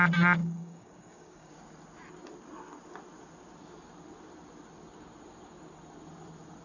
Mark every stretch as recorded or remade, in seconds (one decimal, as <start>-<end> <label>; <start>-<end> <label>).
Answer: 0.0-0.4 recorded; 0.4-1.5 remade; 1.5-6.6 recorded